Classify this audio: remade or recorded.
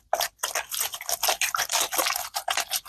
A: recorded